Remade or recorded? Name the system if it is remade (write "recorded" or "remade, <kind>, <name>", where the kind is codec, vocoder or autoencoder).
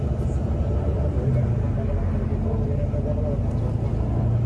recorded